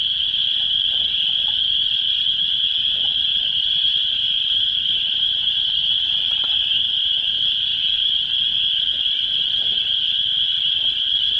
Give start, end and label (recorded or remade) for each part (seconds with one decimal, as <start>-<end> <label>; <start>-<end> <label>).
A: 0.0-3.3 recorded; 3.3-5.8 remade; 5.8-11.4 recorded